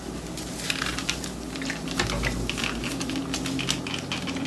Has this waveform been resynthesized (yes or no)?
no